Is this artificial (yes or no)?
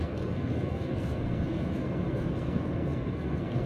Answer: yes